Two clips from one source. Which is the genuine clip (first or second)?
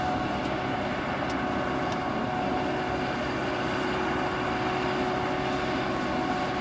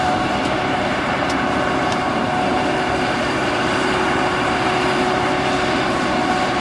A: first